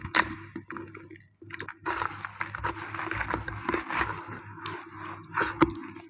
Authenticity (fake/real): real